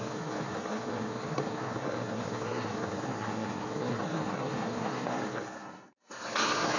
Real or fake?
fake